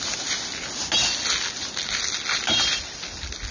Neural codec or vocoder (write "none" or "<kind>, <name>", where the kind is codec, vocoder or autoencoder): none